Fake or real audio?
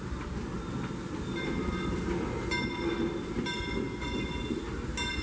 real